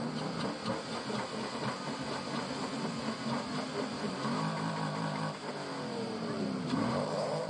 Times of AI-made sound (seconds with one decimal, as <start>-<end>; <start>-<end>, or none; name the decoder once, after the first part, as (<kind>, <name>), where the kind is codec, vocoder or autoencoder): 3.5-7.5 (vocoder, BigVGAN v2)